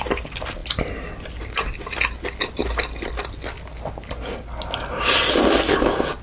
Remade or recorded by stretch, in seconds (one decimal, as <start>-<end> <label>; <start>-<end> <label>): 0.0-6.2 recorded